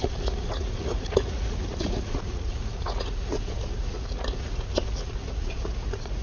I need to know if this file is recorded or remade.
remade